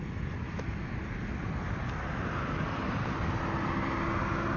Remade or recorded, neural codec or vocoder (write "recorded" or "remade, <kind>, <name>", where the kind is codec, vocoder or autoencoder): recorded